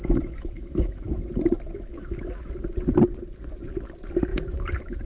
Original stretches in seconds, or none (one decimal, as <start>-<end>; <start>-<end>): 1.2-1.9; 2.5-4.3